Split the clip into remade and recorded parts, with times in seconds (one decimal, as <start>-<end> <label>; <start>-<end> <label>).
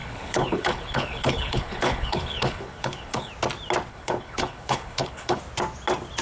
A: 0.0-3.3 remade; 3.3-3.9 recorded; 3.9-5.4 remade; 5.4-6.2 recorded